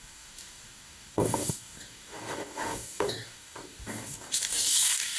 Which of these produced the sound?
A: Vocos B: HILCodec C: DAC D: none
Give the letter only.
C